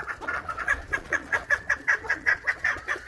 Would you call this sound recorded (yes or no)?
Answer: no